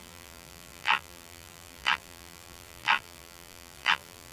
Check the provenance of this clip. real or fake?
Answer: fake